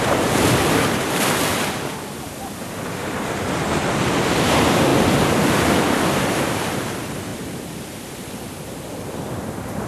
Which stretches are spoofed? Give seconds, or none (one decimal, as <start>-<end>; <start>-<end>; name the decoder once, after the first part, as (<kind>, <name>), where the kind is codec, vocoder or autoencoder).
1.5-2.4 (vocoder, BigVGAN v2); 7.3-8.1